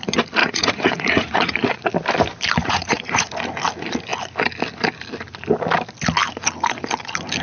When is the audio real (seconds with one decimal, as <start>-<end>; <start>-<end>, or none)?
0.0-0.4; 1.9-2.6; 3.3-7.4